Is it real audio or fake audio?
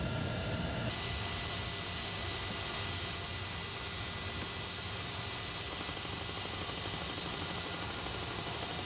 real